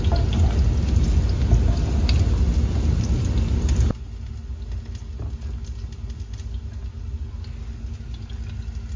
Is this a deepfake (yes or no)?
no